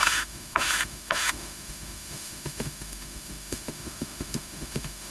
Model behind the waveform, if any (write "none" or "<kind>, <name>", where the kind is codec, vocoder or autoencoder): autoencoder, DAC-VAE